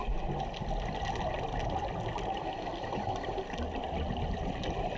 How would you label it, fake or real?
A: real